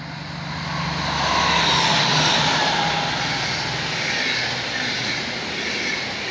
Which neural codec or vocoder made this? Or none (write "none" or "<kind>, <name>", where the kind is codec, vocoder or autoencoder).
none